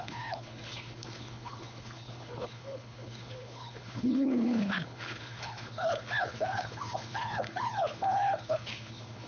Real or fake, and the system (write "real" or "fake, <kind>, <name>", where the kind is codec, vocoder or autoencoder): fake, codec, HILCodec